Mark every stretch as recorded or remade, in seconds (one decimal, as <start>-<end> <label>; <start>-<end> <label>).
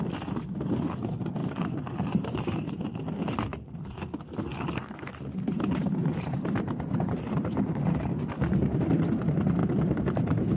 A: 0.0-1.4 recorded; 1.4-2.8 remade; 2.8-3.5 recorded; 3.5-4.0 remade; 4.0-4.5 recorded; 4.5-8.0 remade; 8.0-9.6 recorded; 9.6-10.6 remade